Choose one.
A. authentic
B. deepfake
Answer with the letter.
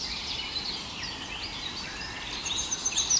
B